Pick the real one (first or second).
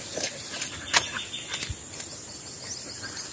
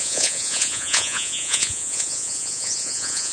first